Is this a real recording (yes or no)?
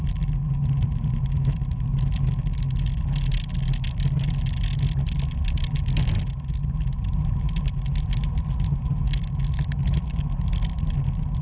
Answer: yes